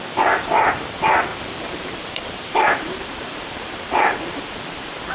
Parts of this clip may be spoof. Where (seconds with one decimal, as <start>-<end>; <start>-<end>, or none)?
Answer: 1.3-4.4